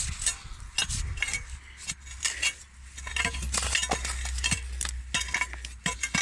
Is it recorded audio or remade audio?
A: recorded